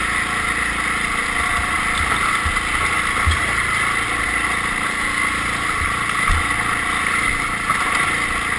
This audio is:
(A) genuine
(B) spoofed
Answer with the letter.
A